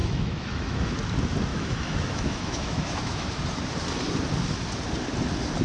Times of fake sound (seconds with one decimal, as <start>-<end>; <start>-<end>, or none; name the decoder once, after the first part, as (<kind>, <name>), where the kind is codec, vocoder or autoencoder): 0.0-0.9 (autoencoder, DAC-VAE); 1.5-3.3